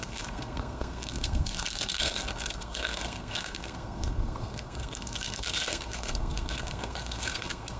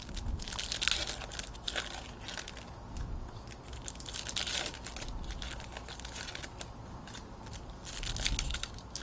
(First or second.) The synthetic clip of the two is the first